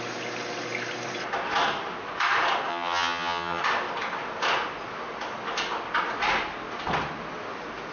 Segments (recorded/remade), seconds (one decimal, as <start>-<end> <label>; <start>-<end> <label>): 0.0-2.7 recorded; 2.7-3.6 remade; 3.6-7.9 recorded